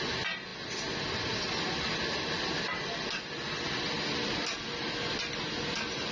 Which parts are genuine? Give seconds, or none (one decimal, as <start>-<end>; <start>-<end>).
0.0-6.1

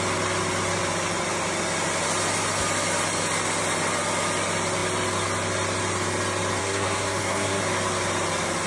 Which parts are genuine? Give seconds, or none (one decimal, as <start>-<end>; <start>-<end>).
0.0-6.6; 7.6-8.7

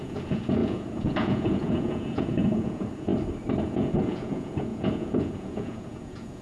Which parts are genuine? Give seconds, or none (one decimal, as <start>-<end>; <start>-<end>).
3.1-3.6

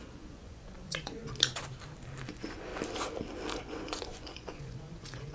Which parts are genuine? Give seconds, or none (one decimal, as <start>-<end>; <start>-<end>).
1.2-2.3; 2.7-3.6

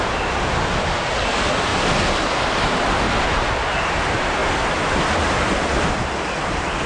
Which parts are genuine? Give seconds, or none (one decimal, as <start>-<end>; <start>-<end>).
0.0-6.9

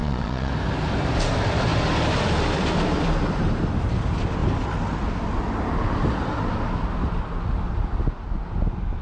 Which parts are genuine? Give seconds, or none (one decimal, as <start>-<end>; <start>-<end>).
0.5-9.0

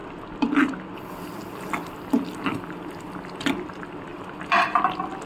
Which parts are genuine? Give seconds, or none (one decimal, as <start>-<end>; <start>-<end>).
0.0-5.3

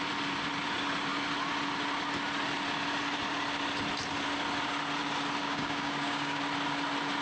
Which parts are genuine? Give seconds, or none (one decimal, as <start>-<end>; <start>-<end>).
0.0-5.4; 6.4-7.2